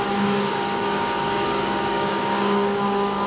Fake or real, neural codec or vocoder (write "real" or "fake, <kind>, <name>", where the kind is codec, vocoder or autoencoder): fake, codec, DAC